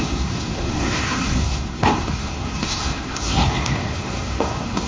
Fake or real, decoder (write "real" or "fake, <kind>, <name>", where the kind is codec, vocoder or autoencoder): fake, codec, SNAC